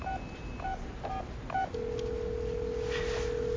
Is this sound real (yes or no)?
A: yes